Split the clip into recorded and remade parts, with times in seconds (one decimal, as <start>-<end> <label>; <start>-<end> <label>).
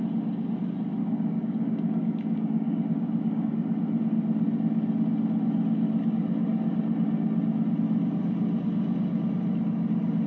0.0-1.0 recorded; 1.0-3.5 remade; 3.5-10.3 recorded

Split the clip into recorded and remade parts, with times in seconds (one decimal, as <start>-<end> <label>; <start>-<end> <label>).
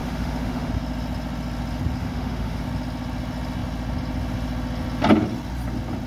0.0-0.7 remade; 0.7-2.0 recorded; 2.0-2.6 remade; 2.6-6.1 recorded